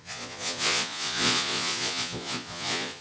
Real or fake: fake